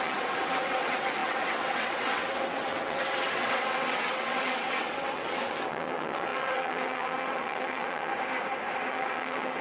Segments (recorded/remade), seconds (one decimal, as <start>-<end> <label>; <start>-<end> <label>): 0.0-8.1 remade; 8.1-8.9 recorded; 8.9-9.6 remade